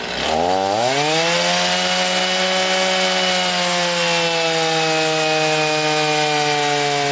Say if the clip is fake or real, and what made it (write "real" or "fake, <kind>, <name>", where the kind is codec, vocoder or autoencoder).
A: real